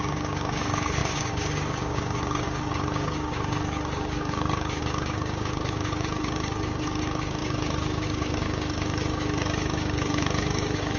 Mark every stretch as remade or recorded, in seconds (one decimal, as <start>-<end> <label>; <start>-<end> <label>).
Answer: 0.0-11.0 remade